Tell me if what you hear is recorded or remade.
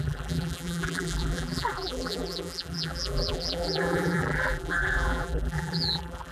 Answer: remade